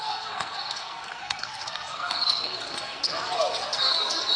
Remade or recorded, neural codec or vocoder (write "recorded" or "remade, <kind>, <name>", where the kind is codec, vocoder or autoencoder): remade, codec, SNAC